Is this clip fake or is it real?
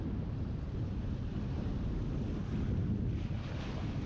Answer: real